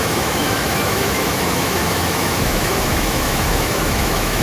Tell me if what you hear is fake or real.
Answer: fake